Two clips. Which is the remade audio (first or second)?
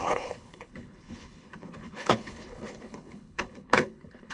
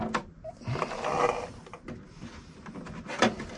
first